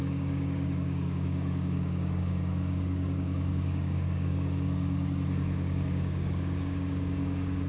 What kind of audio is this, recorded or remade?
remade